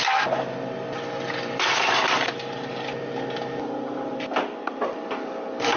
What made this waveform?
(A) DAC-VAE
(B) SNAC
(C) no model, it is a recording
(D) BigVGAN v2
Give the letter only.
C